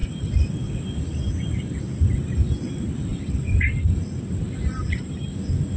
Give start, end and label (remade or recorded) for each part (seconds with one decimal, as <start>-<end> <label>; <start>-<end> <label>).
0.0-3.1 recorded; 3.1-4.3 remade; 4.3-5.8 recorded